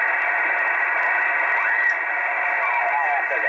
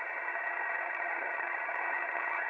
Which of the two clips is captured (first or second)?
first